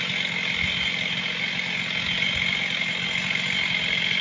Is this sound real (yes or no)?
yes